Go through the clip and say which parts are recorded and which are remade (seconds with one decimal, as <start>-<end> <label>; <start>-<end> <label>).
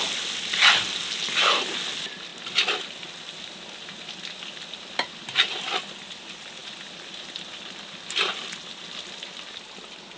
0.0-6.6 recorded; 6.6-7.2 remade; 7.2-10.2 recorded